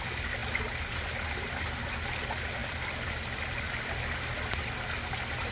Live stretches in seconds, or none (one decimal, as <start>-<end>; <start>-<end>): 0.0-5.5